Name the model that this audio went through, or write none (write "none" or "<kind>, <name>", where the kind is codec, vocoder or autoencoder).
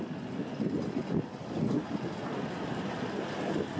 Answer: none